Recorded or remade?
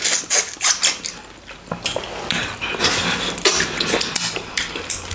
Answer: recorded